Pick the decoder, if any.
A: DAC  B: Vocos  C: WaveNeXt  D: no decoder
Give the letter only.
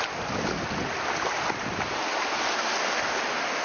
D